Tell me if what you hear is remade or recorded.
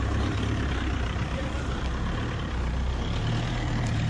remade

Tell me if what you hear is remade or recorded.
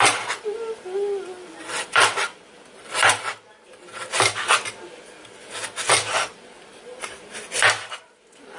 remade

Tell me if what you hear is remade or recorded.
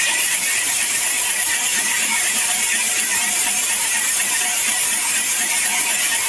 remade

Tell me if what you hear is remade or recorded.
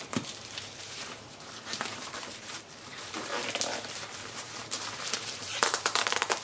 remade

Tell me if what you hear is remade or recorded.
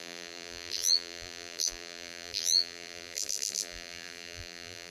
remade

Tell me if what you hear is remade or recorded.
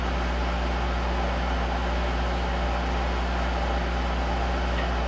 recorded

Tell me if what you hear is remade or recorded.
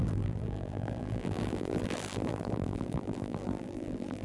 remade